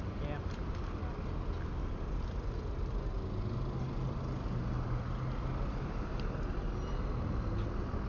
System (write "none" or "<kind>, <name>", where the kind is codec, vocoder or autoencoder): none